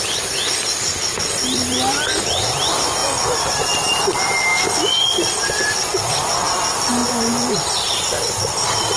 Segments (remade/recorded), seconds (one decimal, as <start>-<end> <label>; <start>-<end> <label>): 0.0-4.5 remade; 4.5-5.0 recorded; 5.0-7.0 remade; 7.0-7.6 recorded; 7.6-9.0 remade